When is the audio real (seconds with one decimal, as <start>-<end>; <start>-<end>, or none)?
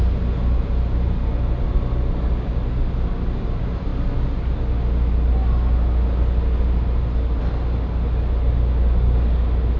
0.0-9.8